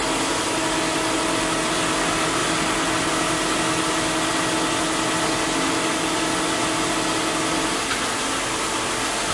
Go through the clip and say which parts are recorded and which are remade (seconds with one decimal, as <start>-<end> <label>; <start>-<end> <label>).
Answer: 0.0-9.3 recorded